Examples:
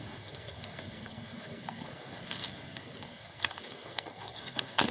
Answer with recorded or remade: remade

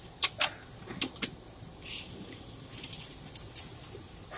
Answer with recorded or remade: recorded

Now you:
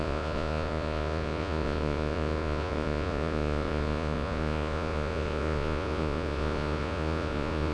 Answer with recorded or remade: remade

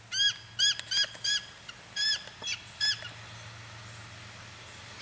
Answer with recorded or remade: recorded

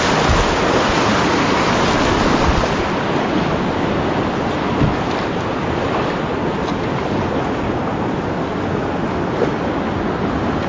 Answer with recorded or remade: recorded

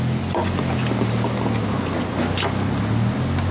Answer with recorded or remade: recorded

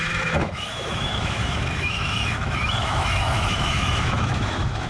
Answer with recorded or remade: remade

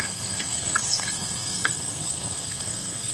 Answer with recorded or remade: remade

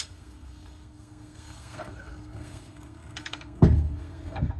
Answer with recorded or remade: remade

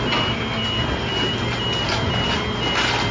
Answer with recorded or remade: recorded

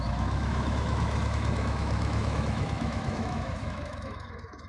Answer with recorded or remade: remade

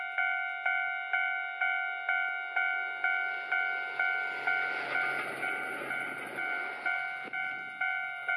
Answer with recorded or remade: recorded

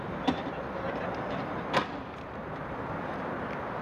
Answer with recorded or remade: recorded